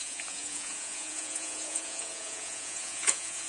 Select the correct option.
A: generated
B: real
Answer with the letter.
A